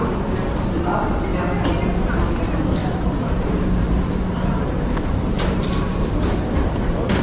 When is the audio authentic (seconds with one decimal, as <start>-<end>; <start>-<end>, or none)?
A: 0.0-2.8

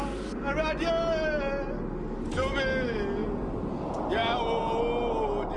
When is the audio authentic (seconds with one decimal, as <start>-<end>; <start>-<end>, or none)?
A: 0.0-3.2; 3.8-5.6

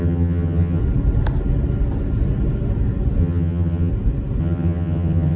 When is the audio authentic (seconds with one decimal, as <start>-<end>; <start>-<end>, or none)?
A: 0.8-3.2; 3.9-4.4

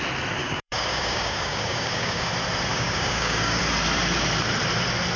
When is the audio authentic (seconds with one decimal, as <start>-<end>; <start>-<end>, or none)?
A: 0.0-0.4; 2.3-2.7; 3.6-5.2

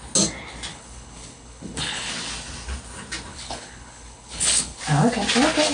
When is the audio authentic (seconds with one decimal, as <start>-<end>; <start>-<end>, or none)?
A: 0.0-0.7; 2.1-3.3; 4.8-5.7

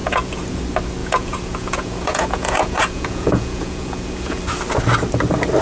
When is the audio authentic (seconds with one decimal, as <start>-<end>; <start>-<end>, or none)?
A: 0.6-1.0; 4.4-5.6

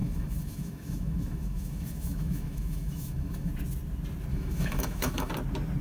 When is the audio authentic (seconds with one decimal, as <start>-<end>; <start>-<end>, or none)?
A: 3.5-4.3; 5.3-5.8

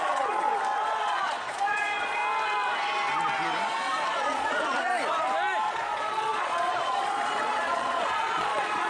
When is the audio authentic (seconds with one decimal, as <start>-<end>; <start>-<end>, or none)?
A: 0.5-1.0; 2.2-4.1; 4.9-5.7